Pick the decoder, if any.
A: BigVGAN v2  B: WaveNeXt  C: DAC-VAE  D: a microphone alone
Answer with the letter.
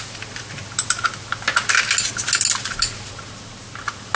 D